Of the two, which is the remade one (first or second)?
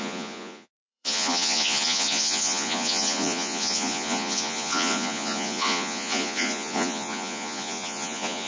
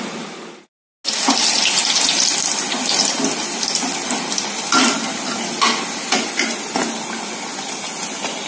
first